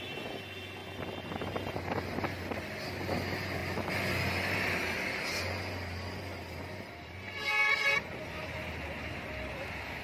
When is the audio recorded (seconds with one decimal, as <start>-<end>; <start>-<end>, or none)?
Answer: 0.0-10.0